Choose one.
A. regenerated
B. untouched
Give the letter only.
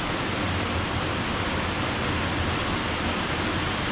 B